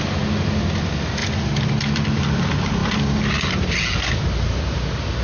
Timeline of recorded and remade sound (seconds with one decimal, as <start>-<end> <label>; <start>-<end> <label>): 0.0-1.2 recorded; 1.2-2.2 remade; 2.2-5.2 recorded